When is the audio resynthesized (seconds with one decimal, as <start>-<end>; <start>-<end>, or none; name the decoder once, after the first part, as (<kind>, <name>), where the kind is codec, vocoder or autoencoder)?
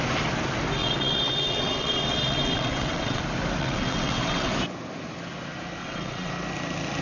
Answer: 0.8-3.2 (vocoder, WaveNeXt); 3.6-4.5; 5.8-6.3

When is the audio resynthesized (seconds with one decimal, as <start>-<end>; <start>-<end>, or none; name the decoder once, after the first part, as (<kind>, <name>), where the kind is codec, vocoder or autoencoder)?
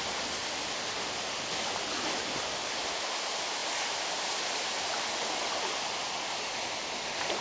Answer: none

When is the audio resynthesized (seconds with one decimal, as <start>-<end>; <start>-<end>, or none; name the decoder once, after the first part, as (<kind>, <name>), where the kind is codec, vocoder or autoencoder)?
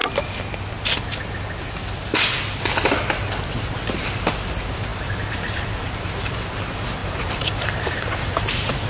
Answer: 4.9-6.5 (vocoder, BigVGAN v2); 7.0-8.9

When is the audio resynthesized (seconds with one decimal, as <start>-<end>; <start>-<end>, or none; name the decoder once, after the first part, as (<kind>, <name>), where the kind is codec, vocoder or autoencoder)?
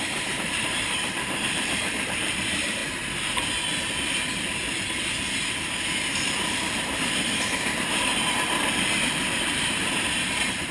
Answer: 0.0-2.8 (vocoder, BigVGAN v2); 6.5-8.1; 9.0-10.7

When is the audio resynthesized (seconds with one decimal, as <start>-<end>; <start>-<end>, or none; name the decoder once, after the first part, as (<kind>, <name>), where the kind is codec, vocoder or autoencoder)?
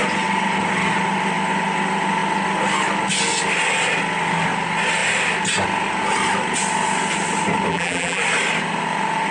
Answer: 7.7-8.2 (vocoder, BigVGAN v2)